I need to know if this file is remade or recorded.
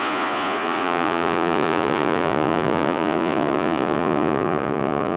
remade